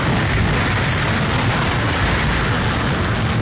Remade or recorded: recorded